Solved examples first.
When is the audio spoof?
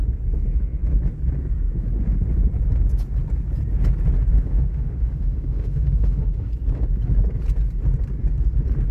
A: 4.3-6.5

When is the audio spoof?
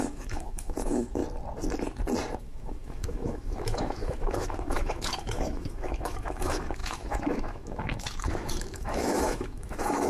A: 0.0-1.2; 2.4-10.1